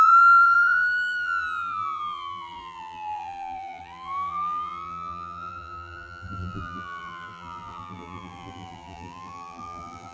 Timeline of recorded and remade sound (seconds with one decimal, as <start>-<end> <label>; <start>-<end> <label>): 0.0-10.1 remade